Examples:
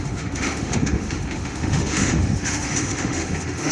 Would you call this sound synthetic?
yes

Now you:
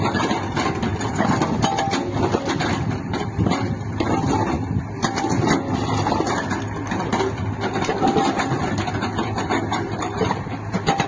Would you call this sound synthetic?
no